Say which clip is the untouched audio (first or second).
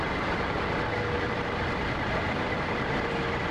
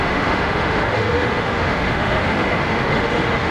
first